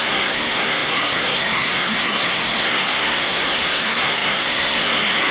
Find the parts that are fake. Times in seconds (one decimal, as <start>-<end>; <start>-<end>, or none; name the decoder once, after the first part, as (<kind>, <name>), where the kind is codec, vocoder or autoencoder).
0.0-5.3 (codec, SNAC)